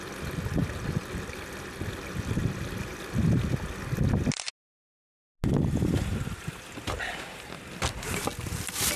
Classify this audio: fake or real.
real